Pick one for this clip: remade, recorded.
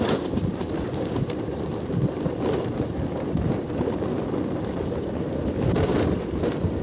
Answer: remade